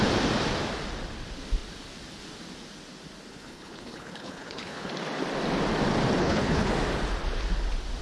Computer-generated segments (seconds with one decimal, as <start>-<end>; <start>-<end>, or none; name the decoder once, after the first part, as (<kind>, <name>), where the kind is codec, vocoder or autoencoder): 3.3-4.9 (codec, HILCodec); 6.2-6.7